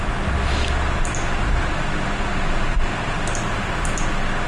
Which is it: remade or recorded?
recorded